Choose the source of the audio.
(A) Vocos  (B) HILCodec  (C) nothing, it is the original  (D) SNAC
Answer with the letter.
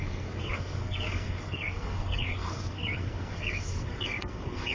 D